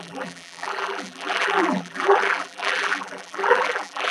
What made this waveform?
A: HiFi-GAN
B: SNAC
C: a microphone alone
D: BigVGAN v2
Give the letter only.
D